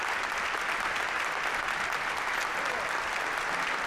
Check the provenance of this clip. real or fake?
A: real